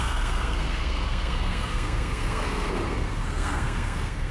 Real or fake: fake